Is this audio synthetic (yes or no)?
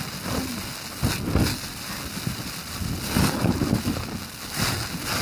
no